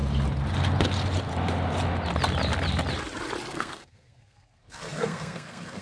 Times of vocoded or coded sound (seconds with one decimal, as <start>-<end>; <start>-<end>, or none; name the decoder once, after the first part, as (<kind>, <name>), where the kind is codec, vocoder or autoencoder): 3.5-5.8 (codec, SNAC)